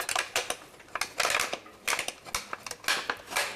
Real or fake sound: real